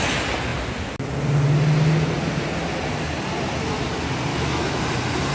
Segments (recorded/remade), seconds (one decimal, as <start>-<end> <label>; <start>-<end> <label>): 0.0-4.3 recorded; 4.3-4.8 remade; 4.8-5.3 recorded

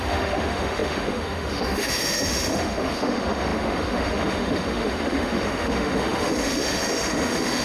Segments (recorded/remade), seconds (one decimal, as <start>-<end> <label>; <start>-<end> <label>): 0.0-7.6 remade

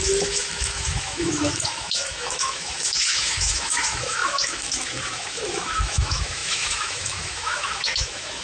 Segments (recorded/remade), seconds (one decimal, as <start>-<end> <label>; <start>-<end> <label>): 0.0-8.4 remade

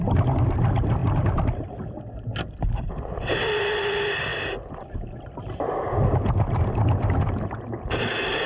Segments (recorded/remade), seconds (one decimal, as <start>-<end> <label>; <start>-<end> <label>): 0.0-8.5 recorded

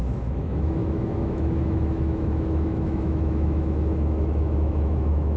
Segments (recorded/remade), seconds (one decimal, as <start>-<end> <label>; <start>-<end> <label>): 0.0-5.4 remade

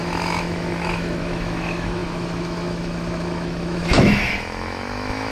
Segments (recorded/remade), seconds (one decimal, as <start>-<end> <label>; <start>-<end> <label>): 0.0-5.3 remade

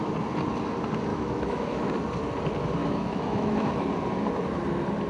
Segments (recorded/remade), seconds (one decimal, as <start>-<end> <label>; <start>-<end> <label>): 0.0-1.1 recorded; 1.1-1.9 remade; 1.9-2.8 recorded; 2.8-3.9 remade; 3.9-5.1 recorded

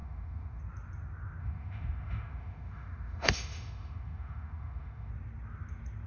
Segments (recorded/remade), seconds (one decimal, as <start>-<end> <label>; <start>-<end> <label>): 0.0-0.6 remade; 0.6-1.4 recorded; 1.4-5.1 remade; 5.1-6.1 recorded